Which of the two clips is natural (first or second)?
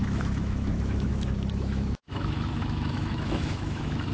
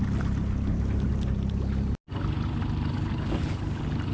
second